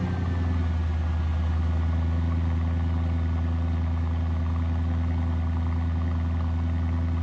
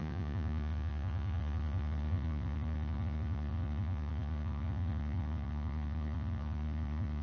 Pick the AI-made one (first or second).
second